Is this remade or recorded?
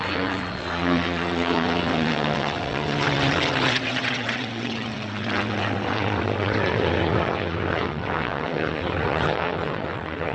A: remade